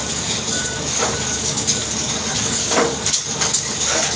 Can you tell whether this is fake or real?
fake